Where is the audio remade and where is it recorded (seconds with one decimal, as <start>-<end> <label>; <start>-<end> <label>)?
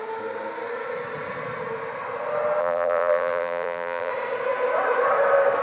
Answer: 0.0-2.6 recorded; 2.6-4.1 remade; 4.1-5.6 recorded